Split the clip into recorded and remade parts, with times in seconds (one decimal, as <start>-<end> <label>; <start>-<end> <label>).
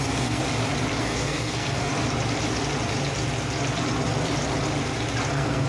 0.0-0.4 remade; 0.4-1.0 recorded; 1.0-1.9 remade; 1.9-5.3 recorded; 5.3-5.7 remade